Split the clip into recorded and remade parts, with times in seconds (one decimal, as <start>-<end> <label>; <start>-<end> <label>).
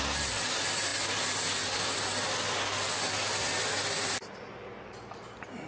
0.0-5.7 recorded